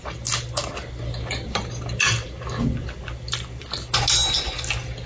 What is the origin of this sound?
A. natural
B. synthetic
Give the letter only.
A